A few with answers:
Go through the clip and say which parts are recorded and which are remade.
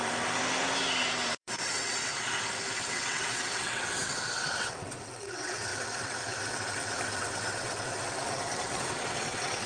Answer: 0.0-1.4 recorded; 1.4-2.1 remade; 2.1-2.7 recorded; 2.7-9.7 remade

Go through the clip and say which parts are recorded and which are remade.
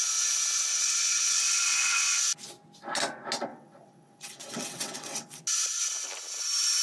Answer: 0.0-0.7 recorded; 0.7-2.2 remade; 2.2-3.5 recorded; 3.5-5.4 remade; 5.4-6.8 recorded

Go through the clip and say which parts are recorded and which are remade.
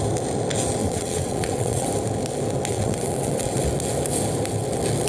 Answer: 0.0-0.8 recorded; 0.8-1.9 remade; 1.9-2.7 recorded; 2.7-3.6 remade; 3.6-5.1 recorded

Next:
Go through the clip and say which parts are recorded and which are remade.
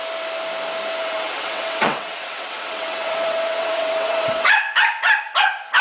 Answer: 0.0-1.0 recorded; 1.0-4.5 remade; 4.5-5.8 recorded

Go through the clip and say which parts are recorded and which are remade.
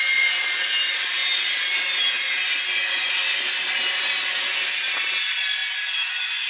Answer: 0.0-6.5 recorded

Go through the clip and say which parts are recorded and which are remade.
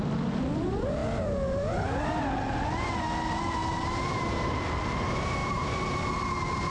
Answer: 0.0-6.7 recorded